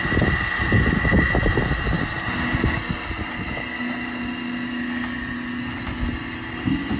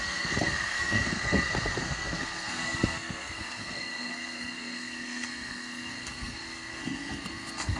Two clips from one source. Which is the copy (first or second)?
second